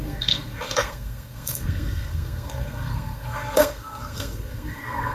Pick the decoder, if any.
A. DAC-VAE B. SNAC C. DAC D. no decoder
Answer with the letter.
B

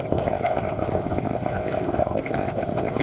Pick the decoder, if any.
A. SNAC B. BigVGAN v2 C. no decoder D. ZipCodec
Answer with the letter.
D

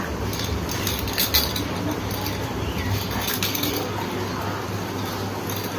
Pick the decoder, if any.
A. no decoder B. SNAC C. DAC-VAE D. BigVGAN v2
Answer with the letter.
A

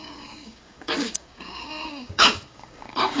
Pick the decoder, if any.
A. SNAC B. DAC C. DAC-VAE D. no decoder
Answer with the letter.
B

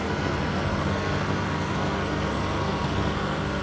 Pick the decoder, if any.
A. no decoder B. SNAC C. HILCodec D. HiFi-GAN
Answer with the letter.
B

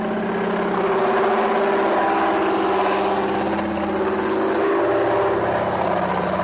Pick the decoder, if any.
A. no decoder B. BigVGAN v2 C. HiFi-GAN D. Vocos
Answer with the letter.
A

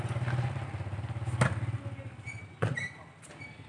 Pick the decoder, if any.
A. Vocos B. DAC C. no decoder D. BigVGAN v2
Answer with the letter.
C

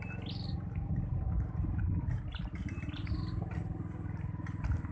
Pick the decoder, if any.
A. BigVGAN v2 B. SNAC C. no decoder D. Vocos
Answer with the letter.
C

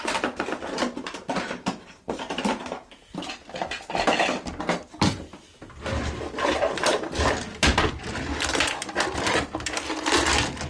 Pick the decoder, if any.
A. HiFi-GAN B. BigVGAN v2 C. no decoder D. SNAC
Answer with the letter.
C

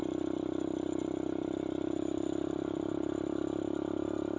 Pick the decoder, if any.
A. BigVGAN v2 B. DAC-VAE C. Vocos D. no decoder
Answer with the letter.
D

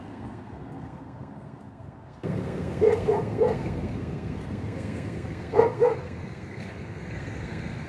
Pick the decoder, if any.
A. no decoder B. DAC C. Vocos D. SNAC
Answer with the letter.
D